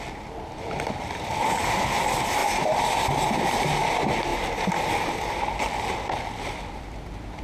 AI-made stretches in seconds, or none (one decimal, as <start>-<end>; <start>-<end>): none

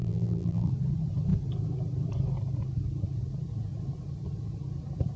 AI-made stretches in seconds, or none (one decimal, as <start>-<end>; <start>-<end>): 0.0-0.7

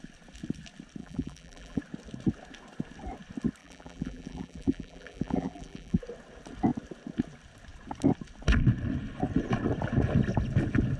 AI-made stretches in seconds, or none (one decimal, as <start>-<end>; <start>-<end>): 1.0-1.8; 3.6-6.0